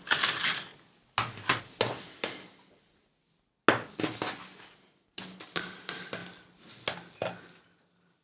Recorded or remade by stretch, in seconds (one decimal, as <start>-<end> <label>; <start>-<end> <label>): 0.0-8.2 recorded